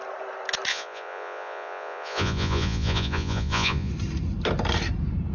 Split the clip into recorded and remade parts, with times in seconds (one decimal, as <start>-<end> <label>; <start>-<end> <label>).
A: 0.0-0.7 recorded; 0.7-3.9 remade; 3.9-5.3 recorded